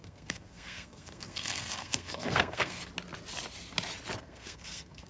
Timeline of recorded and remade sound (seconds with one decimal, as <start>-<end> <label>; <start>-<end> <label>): 0.0-2.8 remade; 2.8-4.2 recorded; 4.2-5.1 remade